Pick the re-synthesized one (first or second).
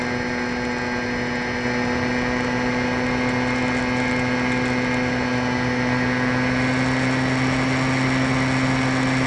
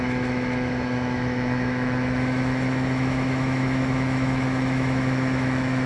second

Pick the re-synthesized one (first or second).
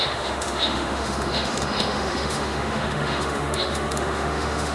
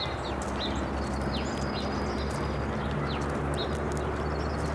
first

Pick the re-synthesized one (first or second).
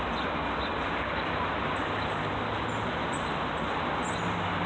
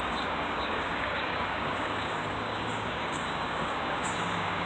second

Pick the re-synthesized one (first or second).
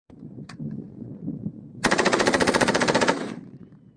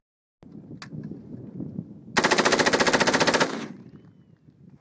first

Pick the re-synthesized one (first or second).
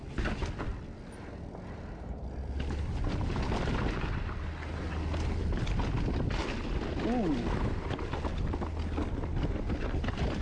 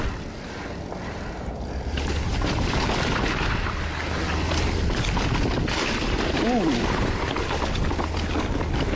second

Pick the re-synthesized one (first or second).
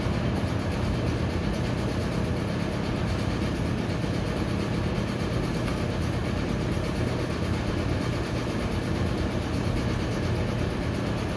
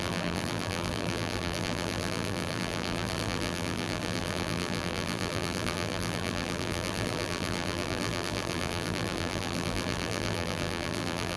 second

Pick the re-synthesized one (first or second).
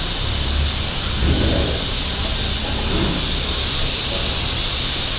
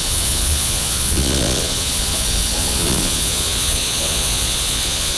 second